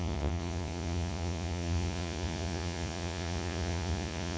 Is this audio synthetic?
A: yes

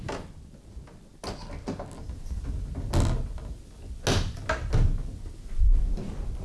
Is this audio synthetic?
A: no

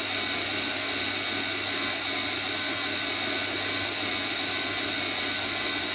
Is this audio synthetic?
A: no